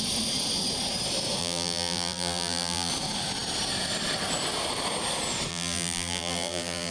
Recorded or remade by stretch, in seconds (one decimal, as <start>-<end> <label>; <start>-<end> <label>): 0.0-1.4 recorded; 1.4-2.9 remade; 2.9-5.5 recorded; 5.5-6.9 remade